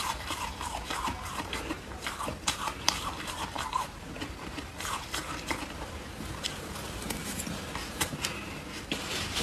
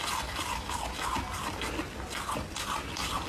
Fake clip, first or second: first